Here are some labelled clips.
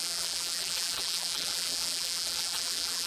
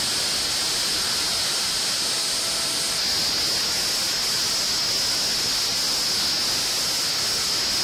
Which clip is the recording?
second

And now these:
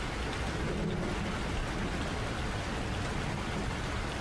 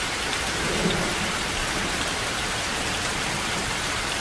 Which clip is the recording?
first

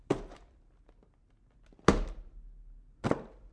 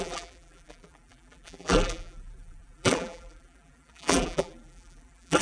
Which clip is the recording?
first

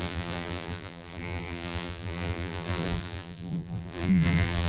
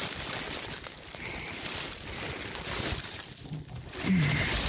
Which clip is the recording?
second